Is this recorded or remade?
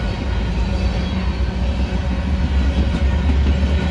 recorded